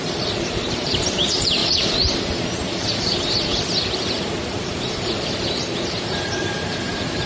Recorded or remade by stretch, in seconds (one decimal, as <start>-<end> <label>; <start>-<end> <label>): 0.0-7.3 remade